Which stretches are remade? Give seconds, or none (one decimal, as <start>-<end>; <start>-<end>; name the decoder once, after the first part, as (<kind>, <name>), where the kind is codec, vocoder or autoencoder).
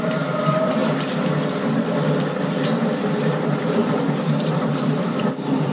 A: 0.0-0.8 (vocoder, BigVGAN v2); 3.2-5.7